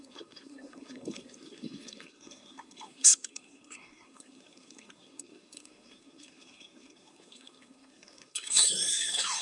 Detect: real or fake fake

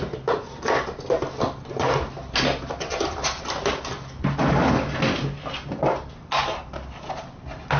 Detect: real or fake real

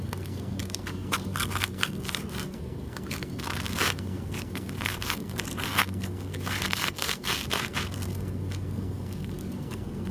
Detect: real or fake fake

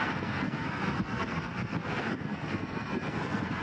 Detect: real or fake fake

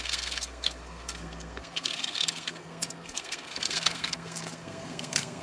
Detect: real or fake fake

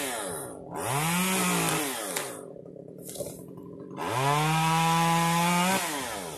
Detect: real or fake real